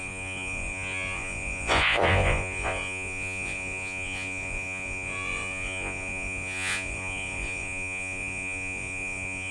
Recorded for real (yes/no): no